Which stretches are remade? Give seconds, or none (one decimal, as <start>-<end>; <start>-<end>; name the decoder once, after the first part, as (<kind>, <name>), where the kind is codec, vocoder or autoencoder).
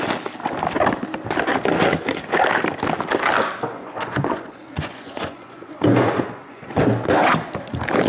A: 3.7-6.8 (vocoder, Vocos)